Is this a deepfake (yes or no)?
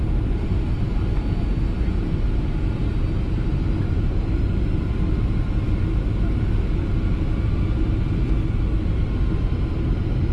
no